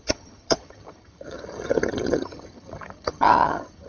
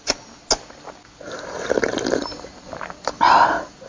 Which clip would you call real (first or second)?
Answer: second